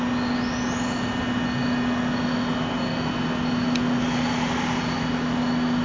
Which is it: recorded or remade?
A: recorded